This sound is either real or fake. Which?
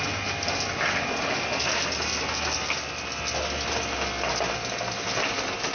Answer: real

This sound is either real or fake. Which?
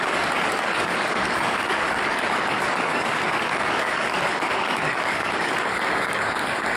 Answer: fake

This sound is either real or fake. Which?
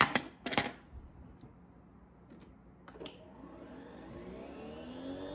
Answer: real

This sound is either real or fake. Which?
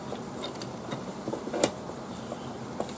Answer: real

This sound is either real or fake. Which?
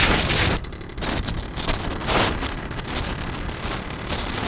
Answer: real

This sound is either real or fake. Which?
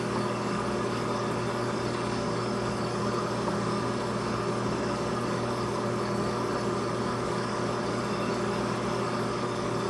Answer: fake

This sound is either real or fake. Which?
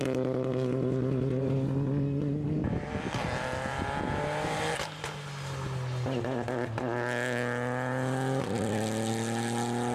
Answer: real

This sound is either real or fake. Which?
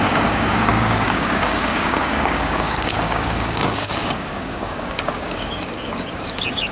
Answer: fake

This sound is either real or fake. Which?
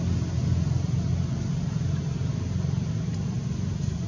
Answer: real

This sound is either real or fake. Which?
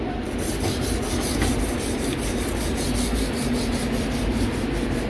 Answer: real